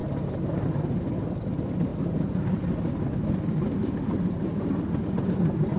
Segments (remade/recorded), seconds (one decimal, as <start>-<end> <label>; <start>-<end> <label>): 0.0-5.8 recorded